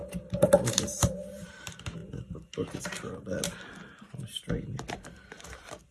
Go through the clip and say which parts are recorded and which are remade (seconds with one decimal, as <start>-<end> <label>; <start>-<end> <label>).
0.0-2.0 remade; 2.0-4.9 recorded; 4.9-5.9 remade